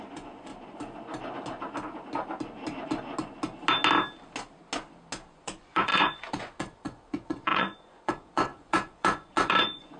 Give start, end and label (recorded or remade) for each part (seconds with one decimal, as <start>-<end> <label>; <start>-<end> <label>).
0.0-0.5 remade; 0.5-5.3 recorded; 5.3-10.0 remade